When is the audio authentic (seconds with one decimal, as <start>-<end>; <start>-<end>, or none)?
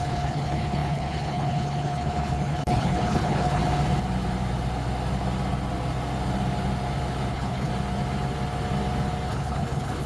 3.6-7.3; 7.7-9.3